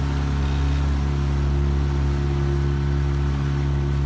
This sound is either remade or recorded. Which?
recorded